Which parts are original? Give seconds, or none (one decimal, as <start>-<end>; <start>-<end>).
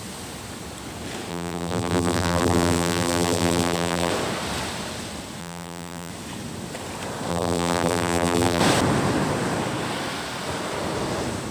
0.0-1.3; 4.1-5.4; 6.1-7.3; 8.6-11.5